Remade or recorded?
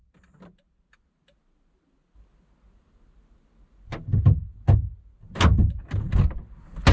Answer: recorded